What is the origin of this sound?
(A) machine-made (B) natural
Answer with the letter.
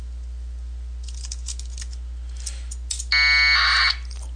B